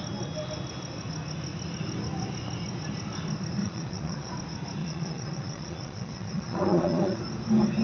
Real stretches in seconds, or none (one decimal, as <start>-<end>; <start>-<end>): 0.0-3.6; 4.3-4.8; 7.2-7.8